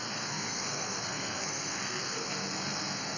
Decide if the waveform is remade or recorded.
remade